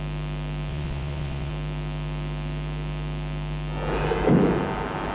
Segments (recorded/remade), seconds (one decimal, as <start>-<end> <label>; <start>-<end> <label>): 0.0-0.7 recorded; 0.7-1.5 remade; 1.5-5.1 recorded